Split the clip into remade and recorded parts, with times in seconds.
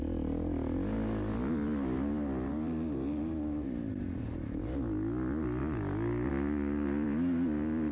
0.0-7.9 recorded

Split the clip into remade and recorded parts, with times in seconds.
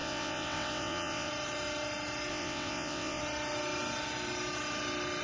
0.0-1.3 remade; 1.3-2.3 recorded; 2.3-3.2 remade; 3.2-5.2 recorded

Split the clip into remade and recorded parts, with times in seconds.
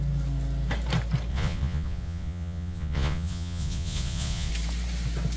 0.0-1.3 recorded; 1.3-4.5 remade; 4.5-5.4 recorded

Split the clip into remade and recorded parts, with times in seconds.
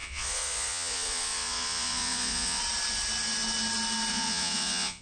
0.0-2.6 remade; 2.6-4.1 recorded; 4.1-5.0 remade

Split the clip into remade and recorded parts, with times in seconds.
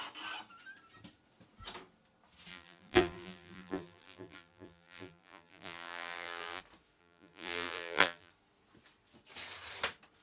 0.0-2.5 recorded; 2.5-6.6 remade; 6.6-7.0 recorded; 7.0-8.3 remade; 8.3-10.2 recorded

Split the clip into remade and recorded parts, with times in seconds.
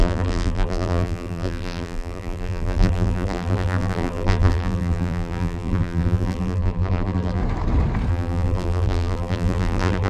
0.0-7.4 remade; 7.4-8.1 recorded; 8.1-10.1 remade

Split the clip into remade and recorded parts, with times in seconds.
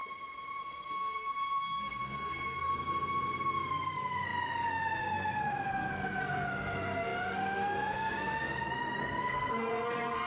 0.0-0.6 recorded; 0.6-2.7 remade; 2.7-3.7 recorded; 3.7-10.3 remade